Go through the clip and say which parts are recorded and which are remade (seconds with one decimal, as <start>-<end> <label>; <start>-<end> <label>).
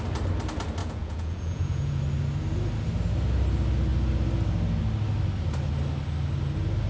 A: 0.0-0.8 recorded; 0.8-2.0 remade; 2.0-6.9 recorded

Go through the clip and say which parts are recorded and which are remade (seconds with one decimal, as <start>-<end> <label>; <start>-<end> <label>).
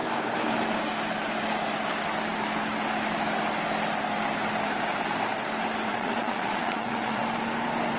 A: 0.0-5.9 recorded; 5.9-7.2 remade; 7.2-8.0 recorded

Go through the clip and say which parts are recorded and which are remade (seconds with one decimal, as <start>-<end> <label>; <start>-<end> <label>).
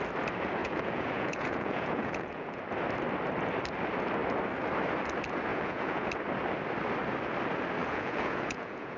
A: 0.0-0.6 recorded; 0.6-2.6 remade; 2.6-5.5 recorded; 5.5-6.1 remade; 6.1-7.8 recorded; 7.8-9.0 remade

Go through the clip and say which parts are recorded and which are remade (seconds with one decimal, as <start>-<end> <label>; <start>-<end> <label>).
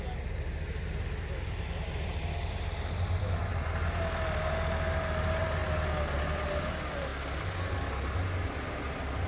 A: 0.0-9.3 recorded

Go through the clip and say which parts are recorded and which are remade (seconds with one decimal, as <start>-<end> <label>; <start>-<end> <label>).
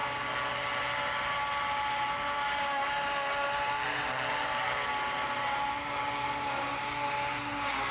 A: 0.0-7.9 recorded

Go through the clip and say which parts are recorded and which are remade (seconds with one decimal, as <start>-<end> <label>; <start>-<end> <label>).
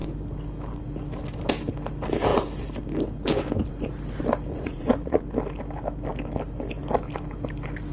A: 0.0-4.5 recorded; 4.5-5.2 remade; 5.2-7.9 recorded